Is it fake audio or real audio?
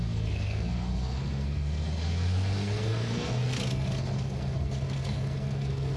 fake